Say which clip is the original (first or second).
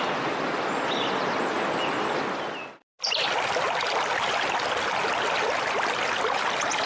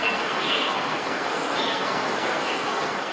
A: first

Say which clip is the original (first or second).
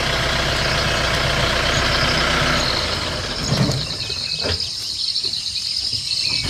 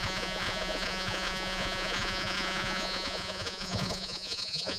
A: first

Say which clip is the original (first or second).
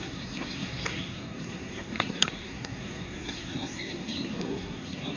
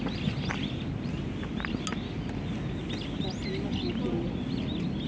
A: second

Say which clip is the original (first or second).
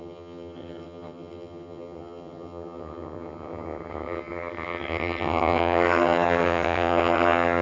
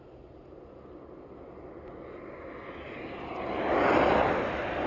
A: second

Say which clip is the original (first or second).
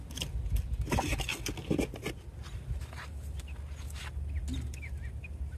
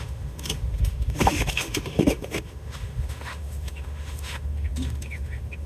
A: first